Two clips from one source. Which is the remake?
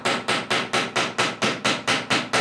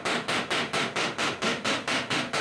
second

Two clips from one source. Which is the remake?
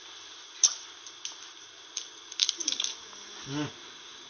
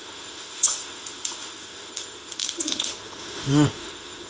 second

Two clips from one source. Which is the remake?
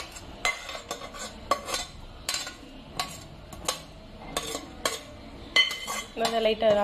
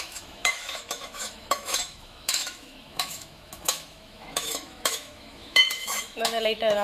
second